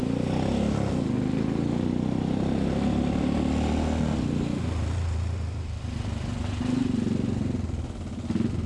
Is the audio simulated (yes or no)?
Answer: no